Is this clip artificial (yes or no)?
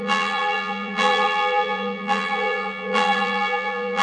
yes